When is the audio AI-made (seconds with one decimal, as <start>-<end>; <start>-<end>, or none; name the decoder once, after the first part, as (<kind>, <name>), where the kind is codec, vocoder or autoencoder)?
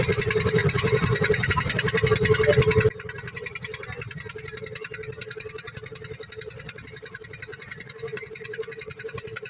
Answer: 0.6-1.5 (vocoder, Vocos); 7.5-9.5